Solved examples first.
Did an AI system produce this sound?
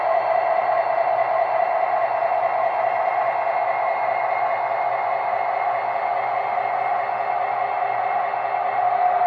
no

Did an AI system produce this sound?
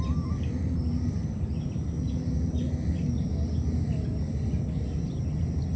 no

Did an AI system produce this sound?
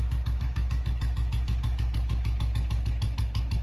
yes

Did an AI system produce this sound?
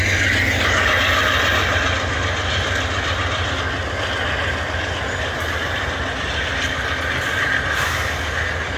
no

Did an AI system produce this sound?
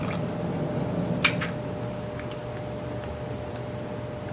no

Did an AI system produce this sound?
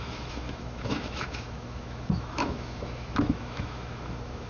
yes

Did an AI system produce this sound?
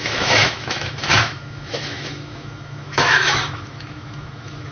yes